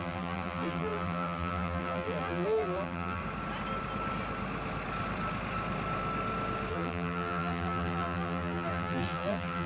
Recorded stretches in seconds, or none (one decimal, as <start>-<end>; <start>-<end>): 3.2-6.7